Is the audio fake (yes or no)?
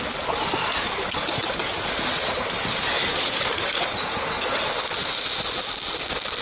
no